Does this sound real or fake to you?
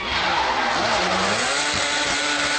real